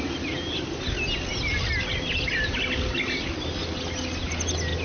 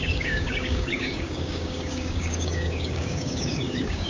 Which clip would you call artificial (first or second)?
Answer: second